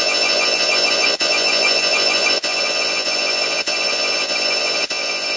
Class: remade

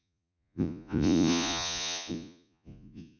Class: remade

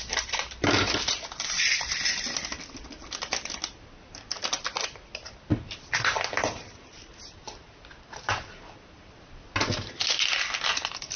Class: recorded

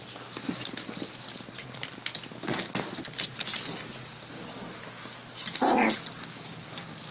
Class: recorded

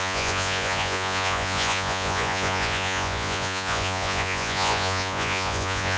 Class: remade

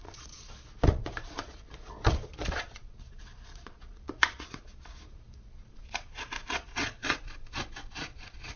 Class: remade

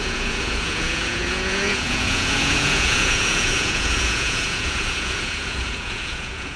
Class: remade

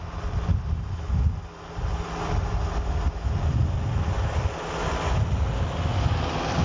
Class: recorded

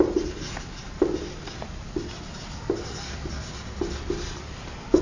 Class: recorded